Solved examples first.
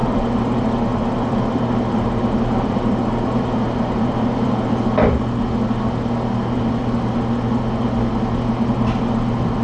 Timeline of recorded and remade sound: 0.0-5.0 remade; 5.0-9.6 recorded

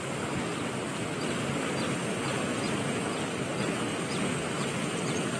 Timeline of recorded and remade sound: 0.0-5.4 recorded